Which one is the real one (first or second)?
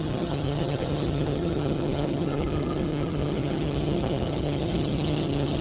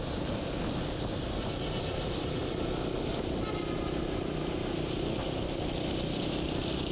second